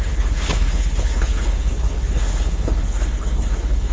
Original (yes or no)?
no